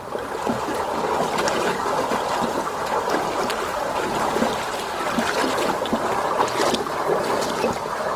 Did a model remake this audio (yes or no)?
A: no